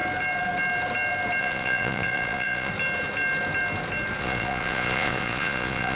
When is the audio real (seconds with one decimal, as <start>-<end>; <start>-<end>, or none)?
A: 0.0-1.4; 2.7-4.2